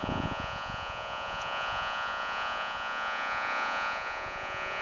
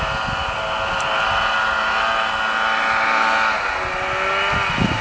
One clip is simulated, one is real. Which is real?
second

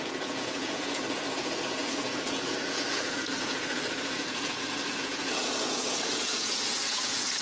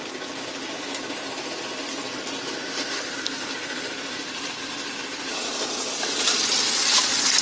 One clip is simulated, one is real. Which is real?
second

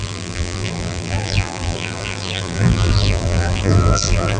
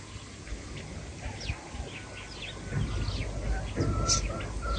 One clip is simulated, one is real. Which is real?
second